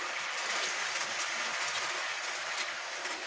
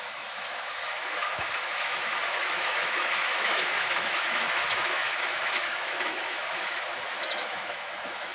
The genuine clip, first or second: first